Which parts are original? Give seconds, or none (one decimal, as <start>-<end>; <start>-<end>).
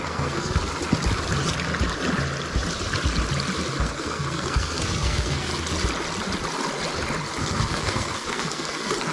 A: 0.6-3.8; 5.5-7.4